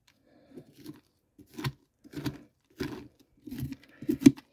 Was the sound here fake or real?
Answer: real